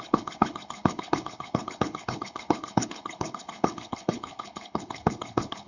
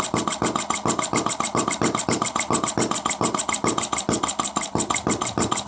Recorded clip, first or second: second